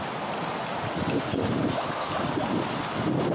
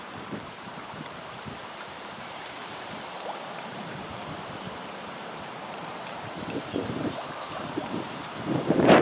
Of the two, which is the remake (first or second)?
second